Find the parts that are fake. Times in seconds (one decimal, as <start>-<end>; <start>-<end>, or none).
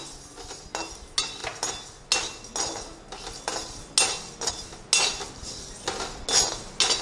none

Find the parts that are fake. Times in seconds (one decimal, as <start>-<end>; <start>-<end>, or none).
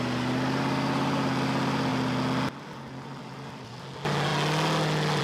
none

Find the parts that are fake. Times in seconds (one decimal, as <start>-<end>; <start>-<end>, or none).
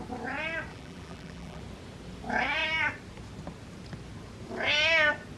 0.7-1.6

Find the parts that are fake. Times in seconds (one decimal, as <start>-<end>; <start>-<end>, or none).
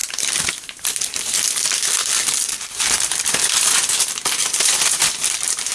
0.0-0.5; 5.0-5.7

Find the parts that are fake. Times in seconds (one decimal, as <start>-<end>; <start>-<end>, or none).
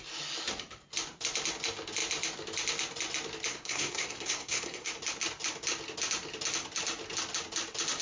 3.5-4.9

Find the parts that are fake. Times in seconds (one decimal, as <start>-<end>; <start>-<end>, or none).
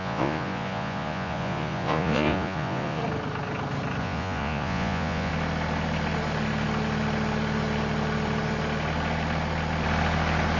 0.0-3.0; 4.0-5.3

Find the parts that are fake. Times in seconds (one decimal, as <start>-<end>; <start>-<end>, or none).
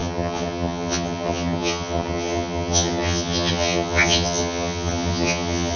0.0-5.8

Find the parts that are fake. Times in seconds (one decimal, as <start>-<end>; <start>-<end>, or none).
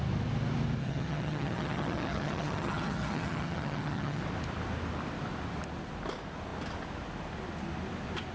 0.8-4.2